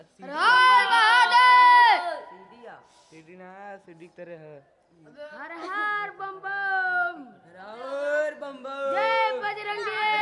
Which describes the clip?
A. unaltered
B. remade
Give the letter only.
A